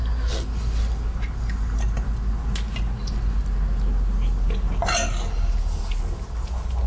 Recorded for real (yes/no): yes